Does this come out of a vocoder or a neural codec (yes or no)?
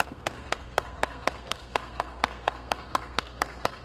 yes